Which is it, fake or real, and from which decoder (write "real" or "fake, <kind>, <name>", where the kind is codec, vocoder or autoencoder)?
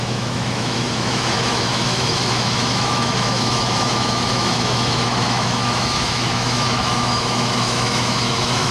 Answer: fake, autoencoder, DAC-VAE